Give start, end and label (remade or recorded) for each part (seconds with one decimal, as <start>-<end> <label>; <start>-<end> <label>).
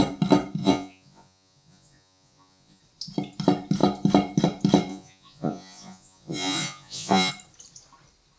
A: 0.0-0.6 recorded; 0.6-2.8 remade; 2.8-4.9 recorded; 4.9-7.3 remade; 7.3-8.4 recorded